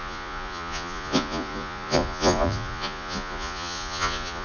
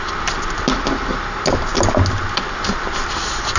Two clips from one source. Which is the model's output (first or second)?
first